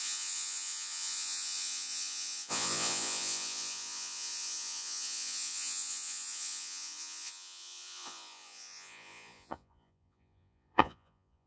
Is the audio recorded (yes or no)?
no